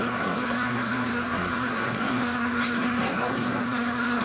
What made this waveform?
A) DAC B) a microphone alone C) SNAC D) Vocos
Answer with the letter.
C